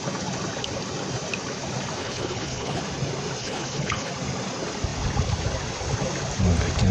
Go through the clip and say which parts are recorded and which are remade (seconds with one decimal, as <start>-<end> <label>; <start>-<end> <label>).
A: 0.0-2.0 recorded; 2.0-2.8 remade; 2.8-3.4 recorded; 3.4-4.1 remade; 4.1-6.9 recorded